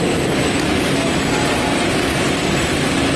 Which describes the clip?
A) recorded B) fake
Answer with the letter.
A